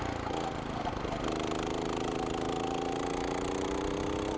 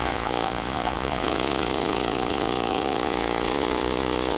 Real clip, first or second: first